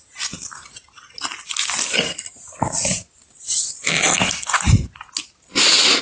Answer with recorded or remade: recorded